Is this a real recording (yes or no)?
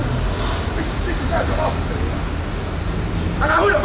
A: yes